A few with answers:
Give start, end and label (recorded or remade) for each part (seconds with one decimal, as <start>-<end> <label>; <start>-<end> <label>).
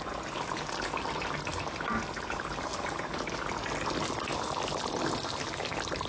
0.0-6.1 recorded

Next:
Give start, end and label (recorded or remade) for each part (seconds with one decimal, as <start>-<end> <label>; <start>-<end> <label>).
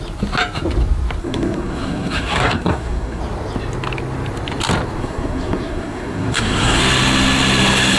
0.0-1.2 recorded; 1.2-3.2 remade; 3.2-5.0 recorded; 5.0-6.8 remade; 6.8-8.0 recorded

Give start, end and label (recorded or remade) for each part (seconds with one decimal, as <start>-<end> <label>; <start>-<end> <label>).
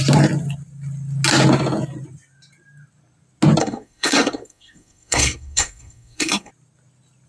0.0-3.6 recorded; 3.6-6.5 remade; 6.5-7.3 recorded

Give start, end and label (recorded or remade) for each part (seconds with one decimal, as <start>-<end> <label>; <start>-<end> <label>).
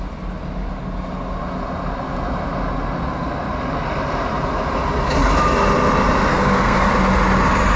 0.0-6.3 recorded; 6.3-6.9 remade; 6.9-7.8 recorded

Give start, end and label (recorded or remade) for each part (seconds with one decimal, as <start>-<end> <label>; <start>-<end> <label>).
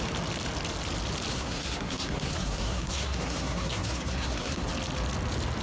0.0-1.3 recorded; 1.3-4.7 remade; 4.7-5.6 recorded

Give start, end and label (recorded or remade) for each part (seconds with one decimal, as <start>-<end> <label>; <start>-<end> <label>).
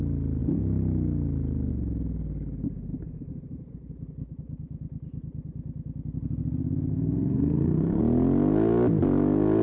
0.0-6.9 recorded; 6.9-8.0 remade; 8.0-9.6 recorded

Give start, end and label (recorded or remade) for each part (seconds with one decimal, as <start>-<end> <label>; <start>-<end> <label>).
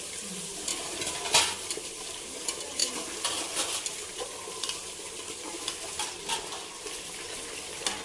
0.0-8.0 recorded